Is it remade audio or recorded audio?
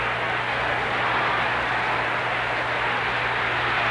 recorded